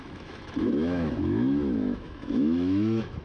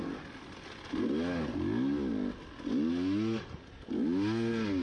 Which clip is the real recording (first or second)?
second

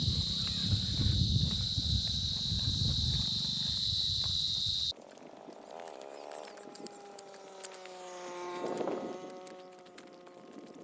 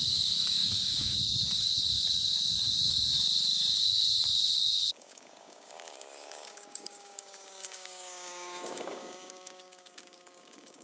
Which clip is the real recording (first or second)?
first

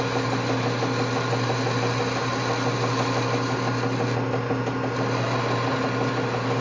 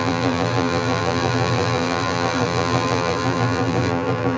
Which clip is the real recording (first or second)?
first